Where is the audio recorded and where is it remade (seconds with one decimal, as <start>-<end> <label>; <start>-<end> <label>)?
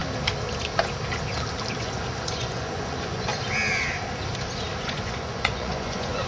0.0-1.8 recorded; 1.8-3.3 remade; 3.3-4.8 recorded; 4.8-6.3 remade